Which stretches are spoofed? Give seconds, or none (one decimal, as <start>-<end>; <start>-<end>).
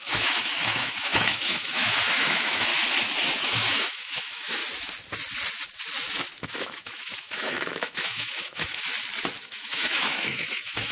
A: 0.0-2.7; 3.4-4.6; 6.4-8.8; 9.4-10.9